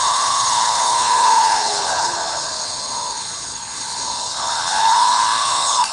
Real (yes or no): no